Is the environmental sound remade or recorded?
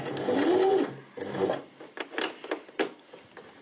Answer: recorded